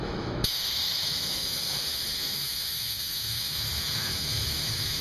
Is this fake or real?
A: fake